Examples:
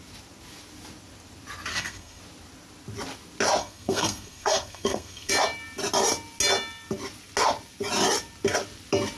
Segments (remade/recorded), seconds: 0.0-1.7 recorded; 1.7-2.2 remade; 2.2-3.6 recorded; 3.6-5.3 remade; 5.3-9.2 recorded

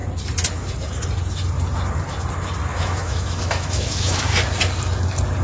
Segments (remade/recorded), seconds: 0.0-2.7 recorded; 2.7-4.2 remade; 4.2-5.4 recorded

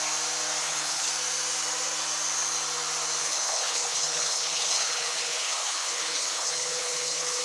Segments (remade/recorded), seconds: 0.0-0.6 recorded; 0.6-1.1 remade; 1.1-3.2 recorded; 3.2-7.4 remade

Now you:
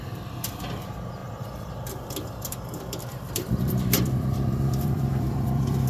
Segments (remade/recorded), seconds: 0.0-5.9 remade

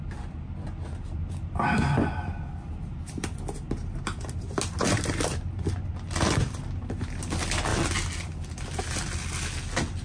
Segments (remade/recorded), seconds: 0.0-10.0 recorded

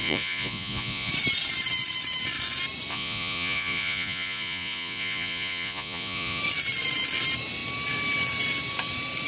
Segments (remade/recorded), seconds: 0.0-1.1 remade; 1.1-2.9 recorded; 2.9-6.4 remade; 6.4-9.3 recorded

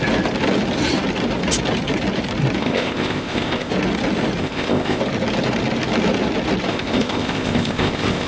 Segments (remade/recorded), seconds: 0.0-2.6 recorded; 2.6-3.7 remade; 3.7-4.4 recorded; 4.4-5.0 remade; 5.0-6.7 recorded; 6.7-8.3 remade

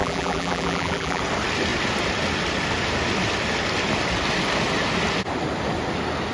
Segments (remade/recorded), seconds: 0.0-1.2 remade; 1.2-6.3 recorded